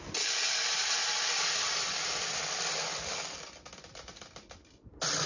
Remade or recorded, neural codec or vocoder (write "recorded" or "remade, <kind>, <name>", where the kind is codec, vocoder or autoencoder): recorded